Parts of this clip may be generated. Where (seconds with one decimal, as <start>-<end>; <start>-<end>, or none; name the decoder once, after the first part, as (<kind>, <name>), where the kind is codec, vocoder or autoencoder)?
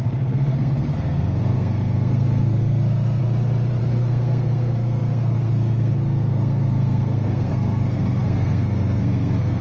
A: 0.0-3.2 (codec, SNAC); 3.8-9.6